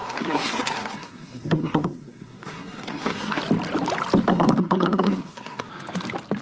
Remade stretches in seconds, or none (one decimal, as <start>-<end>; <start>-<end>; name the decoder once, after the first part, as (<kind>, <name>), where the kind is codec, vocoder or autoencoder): 0.0-3.4 (codec, SNAC); 4.3-5.7